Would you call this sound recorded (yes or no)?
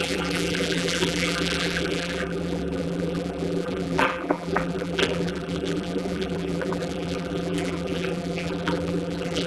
no